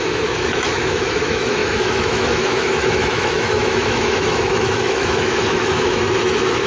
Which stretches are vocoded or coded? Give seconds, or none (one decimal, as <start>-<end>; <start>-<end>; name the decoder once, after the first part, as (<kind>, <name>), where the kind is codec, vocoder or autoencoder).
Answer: 0.0-6.7 (autoencoder, DAC-VAE)